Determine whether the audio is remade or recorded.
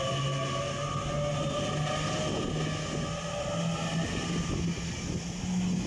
recorded